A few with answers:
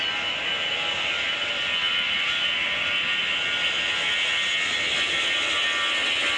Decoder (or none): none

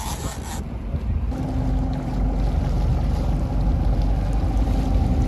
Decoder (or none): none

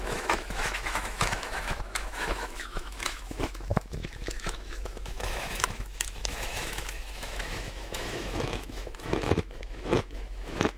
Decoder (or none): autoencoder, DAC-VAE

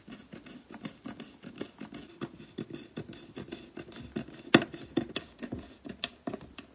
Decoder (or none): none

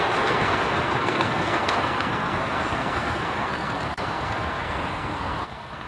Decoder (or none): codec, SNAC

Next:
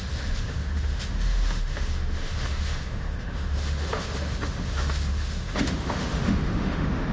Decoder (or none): autoencoder, DAC-VAE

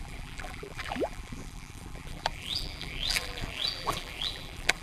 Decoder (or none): vocoder, BigVGAN v2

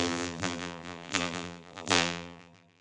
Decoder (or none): vocoder, BigVGAN v2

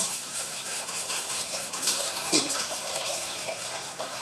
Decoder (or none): codec, SNAC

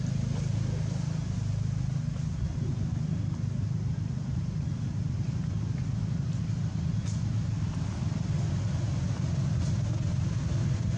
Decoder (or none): none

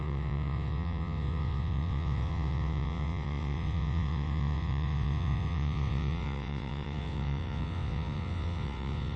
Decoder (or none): vocoder, WaveNeXt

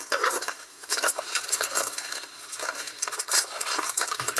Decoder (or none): codec, SNAC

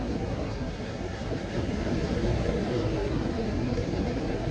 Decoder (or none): codec, SNAC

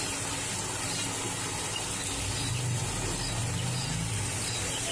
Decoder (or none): none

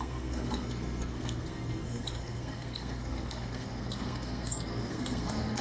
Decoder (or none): codec, SNAC